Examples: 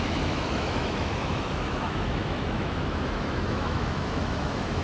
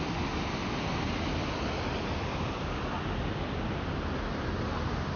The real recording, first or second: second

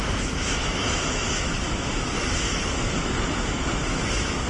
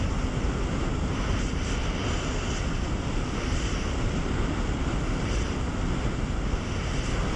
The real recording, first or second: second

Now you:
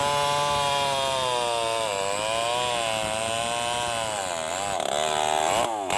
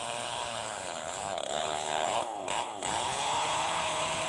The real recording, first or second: first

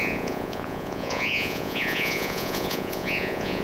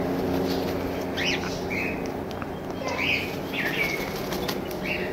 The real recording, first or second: second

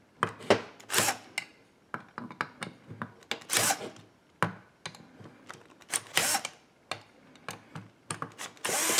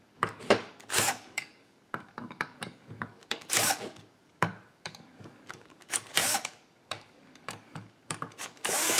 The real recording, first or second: first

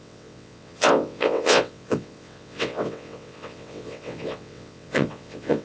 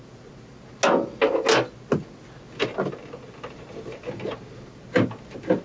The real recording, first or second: second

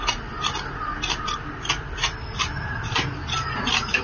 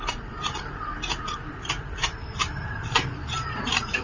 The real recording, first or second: first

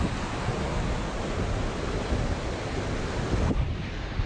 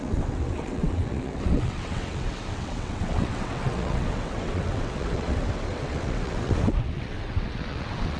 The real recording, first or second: first